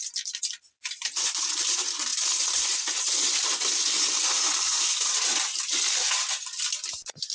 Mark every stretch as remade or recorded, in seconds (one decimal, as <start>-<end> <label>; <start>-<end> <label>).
0.0-7.3 recorded